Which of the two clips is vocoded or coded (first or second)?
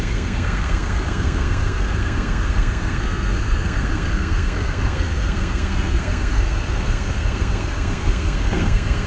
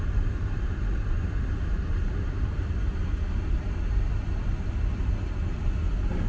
first